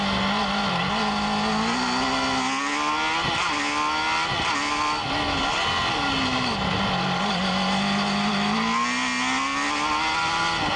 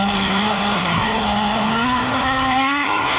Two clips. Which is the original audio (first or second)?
first